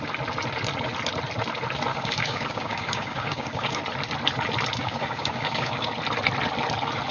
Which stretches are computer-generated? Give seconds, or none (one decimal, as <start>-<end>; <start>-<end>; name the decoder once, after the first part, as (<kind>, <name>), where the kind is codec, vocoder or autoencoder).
1.9-3.8 (codec, DAC); 4.8-5.9